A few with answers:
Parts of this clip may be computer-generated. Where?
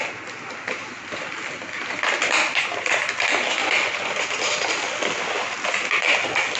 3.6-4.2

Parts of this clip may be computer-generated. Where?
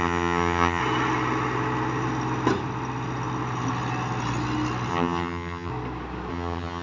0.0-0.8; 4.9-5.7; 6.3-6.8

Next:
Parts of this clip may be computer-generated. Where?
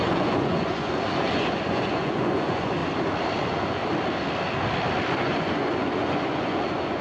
0.0-2.8; 3.4-3.8; 5.2-7.0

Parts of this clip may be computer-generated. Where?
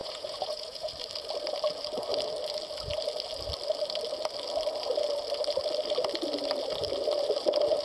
0.0-0.9